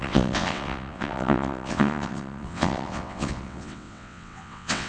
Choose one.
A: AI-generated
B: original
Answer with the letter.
A